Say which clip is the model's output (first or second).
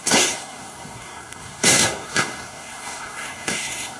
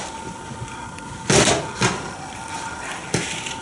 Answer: first